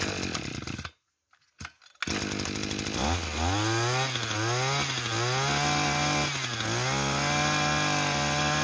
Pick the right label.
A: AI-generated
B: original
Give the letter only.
B